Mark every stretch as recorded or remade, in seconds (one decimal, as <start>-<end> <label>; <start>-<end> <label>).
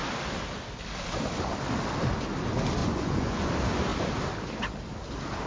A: 0.0-2.8 recorded; 2.8-3.5 remade; 3.5-5.5 recorded